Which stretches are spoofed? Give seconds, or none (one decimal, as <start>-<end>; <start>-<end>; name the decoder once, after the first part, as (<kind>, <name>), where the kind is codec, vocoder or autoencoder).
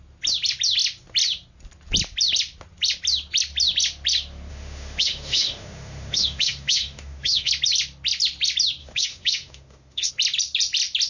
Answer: 4.5-7.5 (autoencoder, DAC-VAE); 8.8-10.1